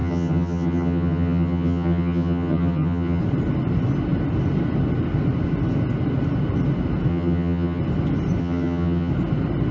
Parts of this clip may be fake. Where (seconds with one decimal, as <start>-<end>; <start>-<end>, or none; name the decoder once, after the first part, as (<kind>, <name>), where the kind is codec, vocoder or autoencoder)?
0.0-3.2 (vocoder, HiFi-GAN); 7.1-7.8; 8.4-9.1